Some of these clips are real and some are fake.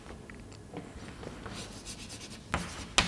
real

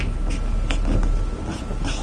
real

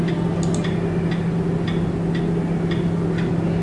real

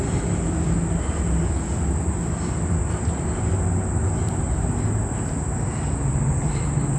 real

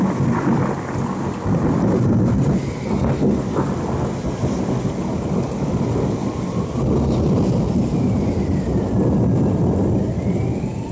real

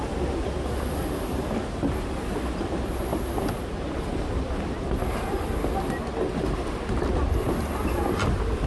real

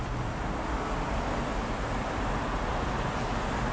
real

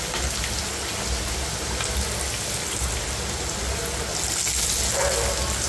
real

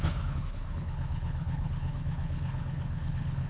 fake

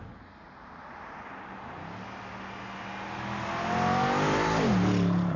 real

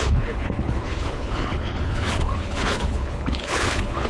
fake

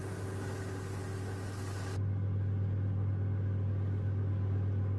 real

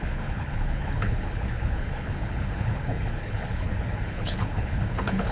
fake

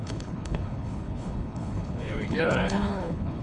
fake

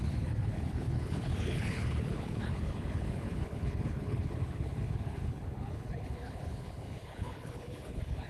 fake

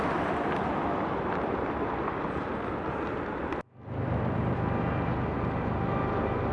real